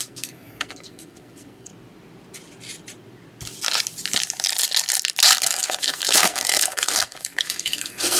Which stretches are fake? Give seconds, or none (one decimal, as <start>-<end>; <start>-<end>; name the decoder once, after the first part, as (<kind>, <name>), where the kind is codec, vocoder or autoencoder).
0.0-1.7 (codec, SNAC); 5.4-8.2